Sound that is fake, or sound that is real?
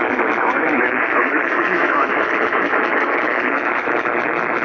fake